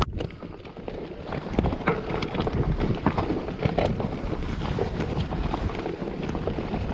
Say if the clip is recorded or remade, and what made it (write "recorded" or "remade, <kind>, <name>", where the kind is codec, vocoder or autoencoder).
recorded